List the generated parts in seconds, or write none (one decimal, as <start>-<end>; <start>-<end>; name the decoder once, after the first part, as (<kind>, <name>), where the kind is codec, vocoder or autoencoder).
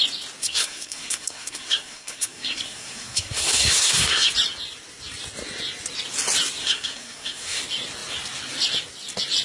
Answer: 0.4-4.3 (codec, SNAC); 6.6-7.6